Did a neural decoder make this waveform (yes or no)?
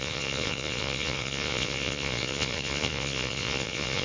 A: yes